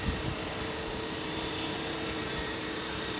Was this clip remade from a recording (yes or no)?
yes